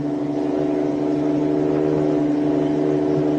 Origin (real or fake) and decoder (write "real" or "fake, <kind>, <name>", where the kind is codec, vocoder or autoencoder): real